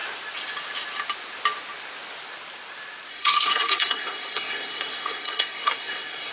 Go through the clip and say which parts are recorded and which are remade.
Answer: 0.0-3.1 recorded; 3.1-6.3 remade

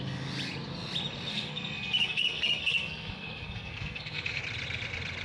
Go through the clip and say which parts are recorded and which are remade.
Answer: 0.0-1.3 recorded; 1.3-4.4 remade; 4.4-5.2 recorded

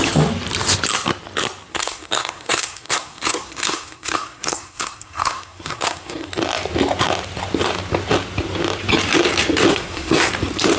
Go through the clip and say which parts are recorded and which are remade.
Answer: 0.0-1.7 recorded; 1.7-6.3 remade; 6.3-9.7 recorded; 9.7-10.3 remade; 10.3-10.8 recorded

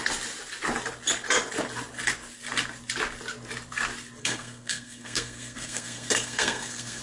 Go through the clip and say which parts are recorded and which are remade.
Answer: 0.0-4.2 recorded; 4.2-7.0 remade